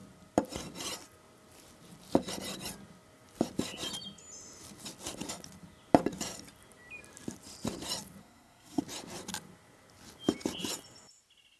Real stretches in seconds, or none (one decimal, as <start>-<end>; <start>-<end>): 0.0-8.2; 8.8-11.6

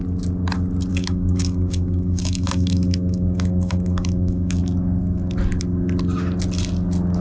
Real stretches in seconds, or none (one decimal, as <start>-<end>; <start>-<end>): 0.0-0.9; 4.6-7.2

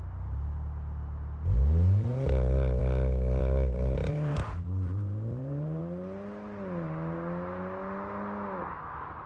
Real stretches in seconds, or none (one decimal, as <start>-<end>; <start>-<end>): 0.0-3.4; 5.8-9.3